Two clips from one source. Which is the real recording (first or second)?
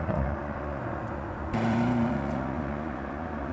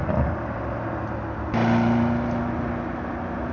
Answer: second